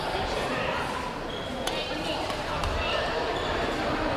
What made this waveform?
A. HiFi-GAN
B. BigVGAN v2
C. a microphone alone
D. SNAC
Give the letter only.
B